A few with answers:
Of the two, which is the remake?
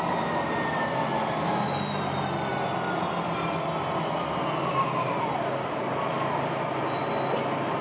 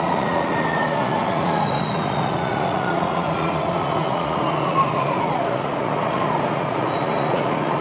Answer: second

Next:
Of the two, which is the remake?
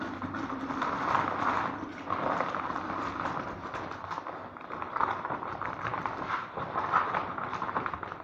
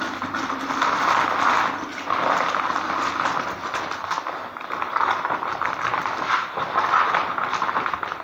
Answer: first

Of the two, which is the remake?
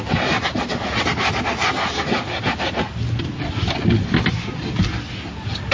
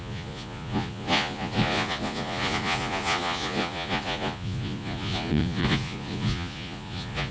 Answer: second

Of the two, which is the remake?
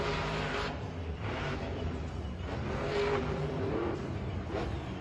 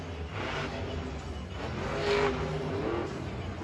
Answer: first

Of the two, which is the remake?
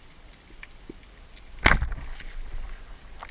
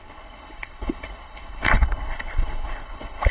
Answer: second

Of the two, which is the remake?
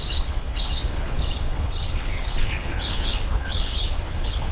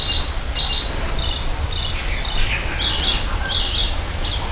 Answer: first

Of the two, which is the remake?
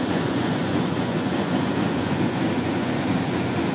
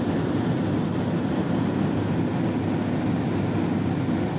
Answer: first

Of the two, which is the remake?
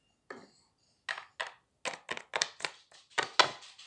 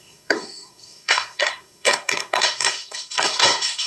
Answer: second